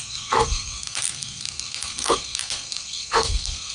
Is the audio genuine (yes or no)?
no